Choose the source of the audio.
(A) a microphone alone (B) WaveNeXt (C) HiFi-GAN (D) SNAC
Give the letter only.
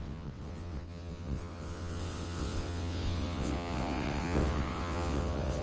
B